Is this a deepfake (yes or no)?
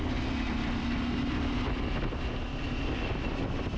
no